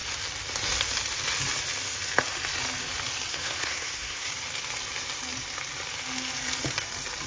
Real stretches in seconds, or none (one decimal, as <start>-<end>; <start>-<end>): 0.0-3.3; 4.3-7.3